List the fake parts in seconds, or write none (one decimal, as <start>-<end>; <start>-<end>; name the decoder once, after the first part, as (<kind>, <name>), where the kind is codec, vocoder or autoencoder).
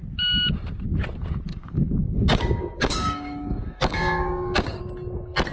1.5-4.8 (codec, DAC)